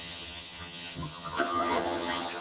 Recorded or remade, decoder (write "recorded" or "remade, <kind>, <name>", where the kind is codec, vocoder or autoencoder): remade, vocoder, HiFi-GAN